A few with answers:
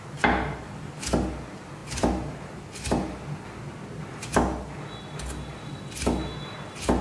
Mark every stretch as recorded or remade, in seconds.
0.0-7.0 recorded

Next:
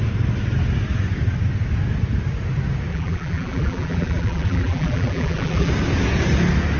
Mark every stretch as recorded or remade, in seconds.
0.0-2.9 recorded; 2.9-5.7 remade; 5.7-6.8 recorded

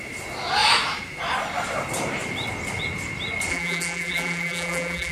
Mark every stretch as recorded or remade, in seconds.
0.0-3.5 recorded; 3.5-5.1 remade